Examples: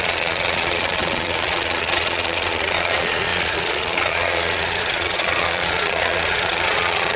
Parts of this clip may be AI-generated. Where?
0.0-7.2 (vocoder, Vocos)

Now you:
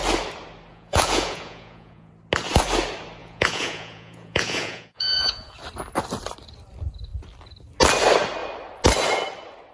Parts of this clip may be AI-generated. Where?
0.7-2.1 (vocoder, Vocos); 3.2-5.5

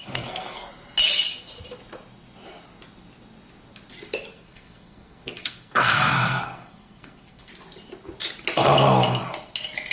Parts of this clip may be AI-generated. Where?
0.0-0.7 (codec, SNAC); 4.3-7.5